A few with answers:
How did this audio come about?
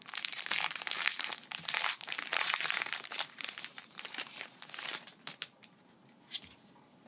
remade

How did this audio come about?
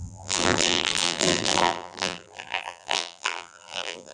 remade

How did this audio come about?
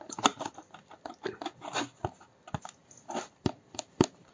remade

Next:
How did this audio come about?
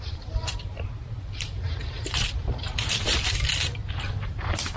remade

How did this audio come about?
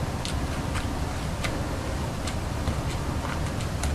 recorded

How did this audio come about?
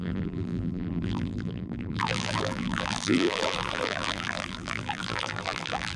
remade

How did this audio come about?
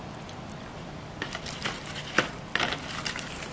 remade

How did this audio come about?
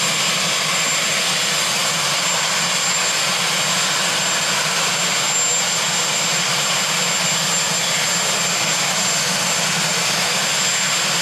recorded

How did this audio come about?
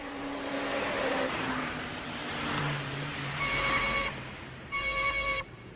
remade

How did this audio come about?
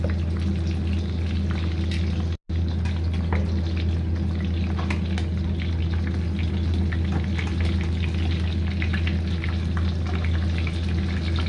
recorded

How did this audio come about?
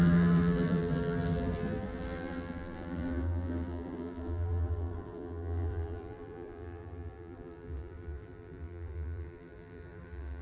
remade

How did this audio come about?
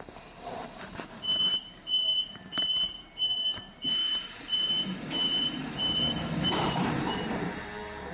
remade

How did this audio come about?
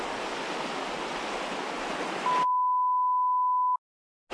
recorded